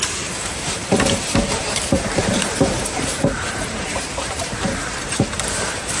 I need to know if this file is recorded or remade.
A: remade